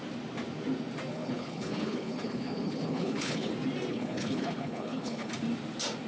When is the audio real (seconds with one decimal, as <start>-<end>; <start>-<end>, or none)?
0.0-1.1; 3.5-3.9; 5.3-6.1